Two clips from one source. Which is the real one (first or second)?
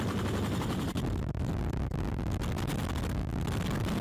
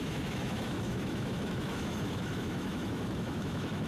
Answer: first